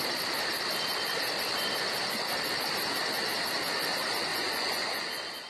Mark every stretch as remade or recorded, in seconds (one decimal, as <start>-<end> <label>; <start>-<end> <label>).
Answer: 0.0-4.3 recorded; 4.3-5.0 remade; 5.0-5.5 recorded